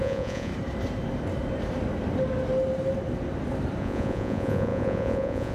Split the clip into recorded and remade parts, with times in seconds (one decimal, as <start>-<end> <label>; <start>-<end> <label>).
0.0-0.5 remade; 0.5-3.8 recorded; 3.8-5.5 remade